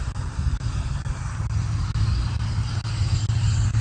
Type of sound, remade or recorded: recorded